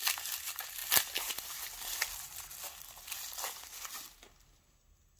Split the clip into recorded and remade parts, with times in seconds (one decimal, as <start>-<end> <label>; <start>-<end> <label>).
0.0-5.2 recorded